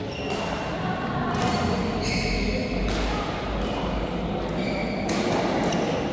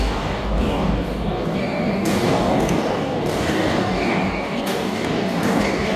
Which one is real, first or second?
first